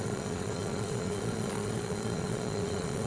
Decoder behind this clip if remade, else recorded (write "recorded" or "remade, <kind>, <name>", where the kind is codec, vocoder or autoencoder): remade, vocoder, Vocos